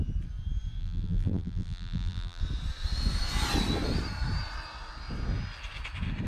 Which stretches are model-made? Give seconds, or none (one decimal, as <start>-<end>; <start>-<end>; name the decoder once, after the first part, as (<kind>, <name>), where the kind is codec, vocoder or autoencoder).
0.8-2.4 (vocoder, BigVGAN v2)